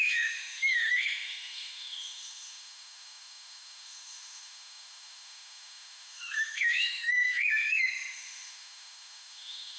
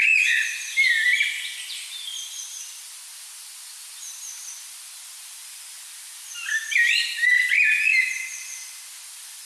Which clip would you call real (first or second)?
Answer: second